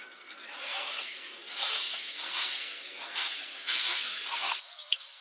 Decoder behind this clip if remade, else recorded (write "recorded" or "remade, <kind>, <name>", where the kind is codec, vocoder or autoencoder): remade, codec, SNAC